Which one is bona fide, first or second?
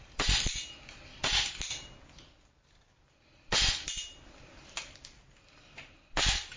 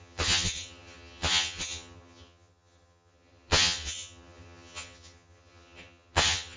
first